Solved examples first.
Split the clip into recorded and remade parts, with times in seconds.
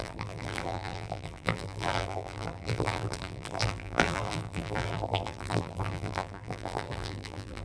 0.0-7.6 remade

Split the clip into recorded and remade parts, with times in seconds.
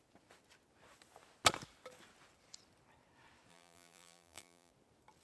0.0-3.5 recorded; 3.5-4.7 remade; 4.7-5.2 recorded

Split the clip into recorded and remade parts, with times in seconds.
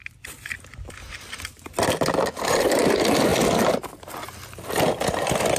0.0-5.6 recorded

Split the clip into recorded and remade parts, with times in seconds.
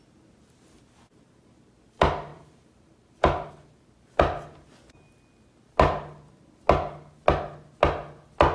0.0-2.3 recorded; 2.3-3.5 remade; 3.5-8.5 recorded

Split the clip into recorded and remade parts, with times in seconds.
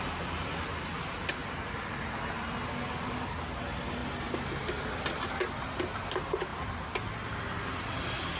0.0-1.4 recorded; 1.4-2.2 remade; 2.2-8.4 recorded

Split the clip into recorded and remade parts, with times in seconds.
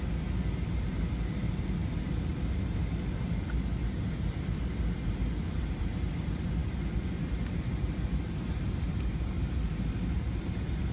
0.0-10.9 recorded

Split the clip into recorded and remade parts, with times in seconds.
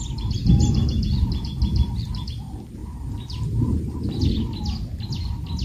0.0-2.8 recorded; 2.8-3.9 remade; 3.9-5.6 recorded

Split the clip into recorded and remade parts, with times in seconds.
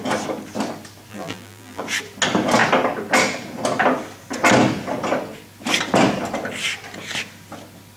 0.0-1.1 recorded; 1.1-1.8 remade; 1.8-8.0 recorded